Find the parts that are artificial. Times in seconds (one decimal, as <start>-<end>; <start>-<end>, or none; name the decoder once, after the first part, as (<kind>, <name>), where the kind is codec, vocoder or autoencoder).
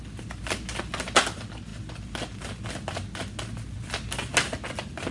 none